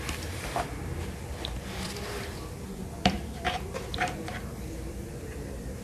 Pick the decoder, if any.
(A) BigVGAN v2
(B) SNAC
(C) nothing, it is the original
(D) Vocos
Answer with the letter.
A